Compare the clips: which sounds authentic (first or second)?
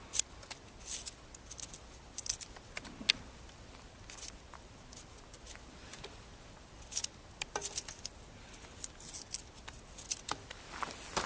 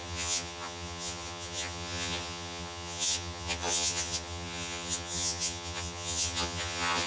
first